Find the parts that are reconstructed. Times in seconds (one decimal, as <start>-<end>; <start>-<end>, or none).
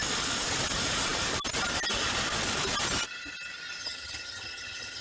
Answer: 3.8-5.0